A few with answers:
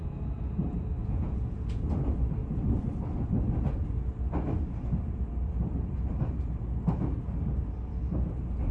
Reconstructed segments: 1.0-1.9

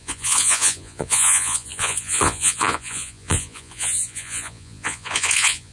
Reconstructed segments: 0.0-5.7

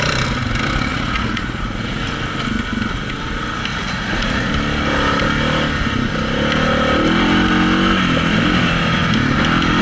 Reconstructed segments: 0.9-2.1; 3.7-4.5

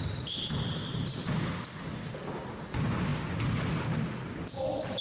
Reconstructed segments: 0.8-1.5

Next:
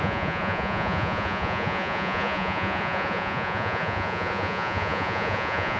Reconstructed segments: 0.0-5.8